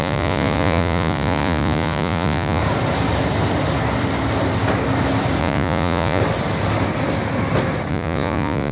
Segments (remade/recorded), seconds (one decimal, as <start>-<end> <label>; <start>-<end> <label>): 0.0-2.6 remade; 2.6-5.4 recorded; 5.4-6.2 remade; 6.2-7.9 recorded; 7.9-8.7 remade